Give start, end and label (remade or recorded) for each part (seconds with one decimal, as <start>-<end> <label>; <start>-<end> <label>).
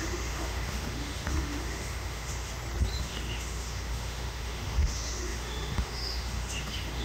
0.0-2.5 remade; 2.5-3.0 recorded; 3.0-7.0 remade